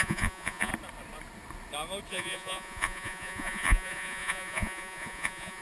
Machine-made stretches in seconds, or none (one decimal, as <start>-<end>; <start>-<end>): 0.0-0.7; 2.1-5.6